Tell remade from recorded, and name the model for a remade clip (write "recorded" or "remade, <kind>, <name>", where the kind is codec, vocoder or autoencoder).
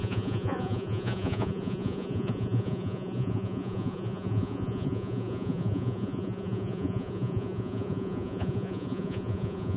remade, vocoder, Vocos